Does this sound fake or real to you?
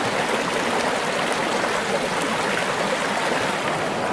real